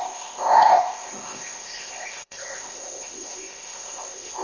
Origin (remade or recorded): remade